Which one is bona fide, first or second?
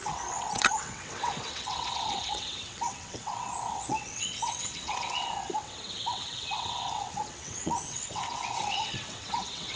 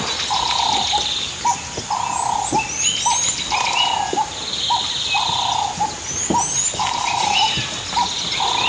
second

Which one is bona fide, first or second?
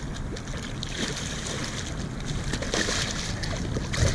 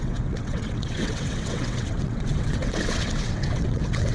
first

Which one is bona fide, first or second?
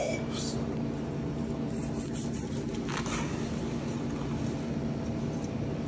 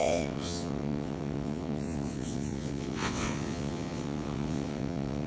first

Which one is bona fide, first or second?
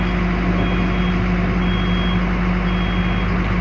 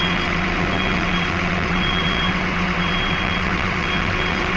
first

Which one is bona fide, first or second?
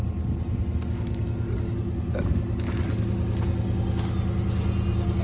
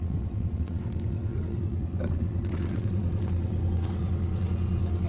first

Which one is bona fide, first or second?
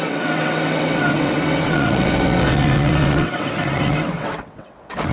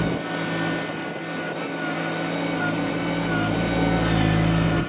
second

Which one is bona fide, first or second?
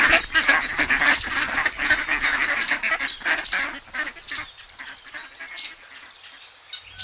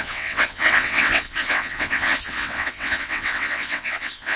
first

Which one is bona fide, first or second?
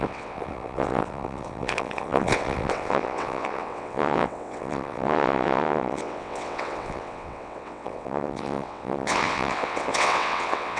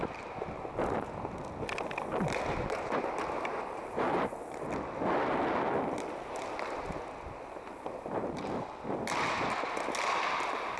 second